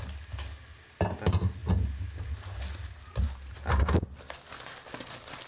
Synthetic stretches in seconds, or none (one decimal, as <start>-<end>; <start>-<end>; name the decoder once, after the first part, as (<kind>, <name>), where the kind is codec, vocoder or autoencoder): none